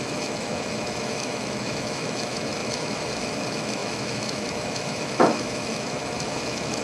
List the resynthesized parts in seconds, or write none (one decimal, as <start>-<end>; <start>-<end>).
0.0-6.8